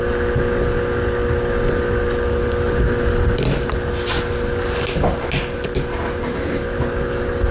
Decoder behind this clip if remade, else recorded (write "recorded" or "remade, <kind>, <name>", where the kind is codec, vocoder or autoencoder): recorded